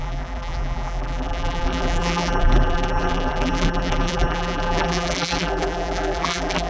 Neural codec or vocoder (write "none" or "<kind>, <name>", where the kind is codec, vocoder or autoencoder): vocoder, BigVGAN v2